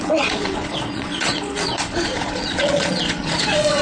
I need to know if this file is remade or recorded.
remade